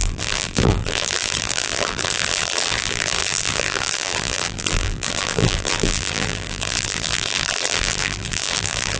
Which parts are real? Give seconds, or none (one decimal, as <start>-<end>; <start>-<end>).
none